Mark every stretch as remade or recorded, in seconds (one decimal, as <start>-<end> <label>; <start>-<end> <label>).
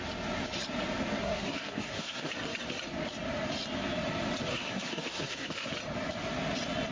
0.0-1.2 recorded; 1.2-2.3 remade; 2.3-4.5 recorded; 4.5-5.7 remade; 5.7-6.9 recorded